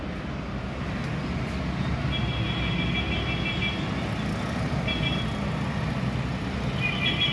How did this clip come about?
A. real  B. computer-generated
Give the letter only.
A